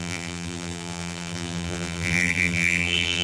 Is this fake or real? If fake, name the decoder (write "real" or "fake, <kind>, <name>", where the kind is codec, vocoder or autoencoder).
fake, vocoder, BigVGAN v2